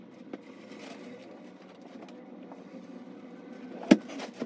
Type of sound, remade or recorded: recorded